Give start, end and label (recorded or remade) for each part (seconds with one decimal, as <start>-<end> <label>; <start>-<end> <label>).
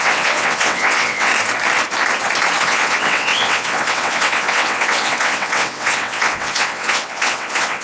0.0-1.3 remade; 1.3-2.6 recorded; 2.6-7.8 remade